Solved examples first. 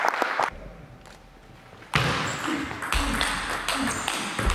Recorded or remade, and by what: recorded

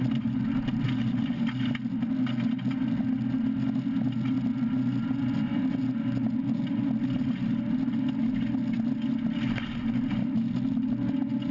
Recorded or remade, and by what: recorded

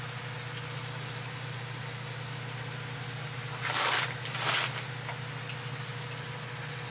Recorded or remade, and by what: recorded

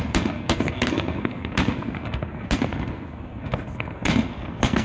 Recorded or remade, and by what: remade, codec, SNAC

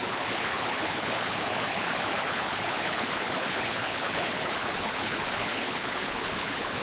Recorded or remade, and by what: remade, codec, HILCodec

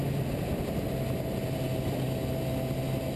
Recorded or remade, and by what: recorded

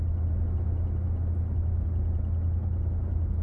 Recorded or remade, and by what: recorded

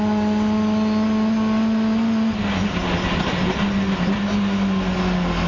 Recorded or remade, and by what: recorded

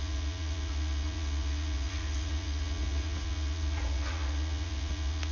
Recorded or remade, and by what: remade, vocoder, Vocos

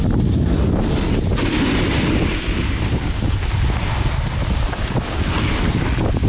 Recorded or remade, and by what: recorded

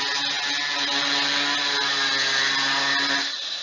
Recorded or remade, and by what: recorded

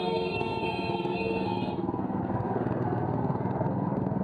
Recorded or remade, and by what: remade, codec, SNAC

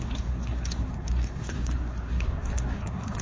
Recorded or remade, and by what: remade, codec, SNAC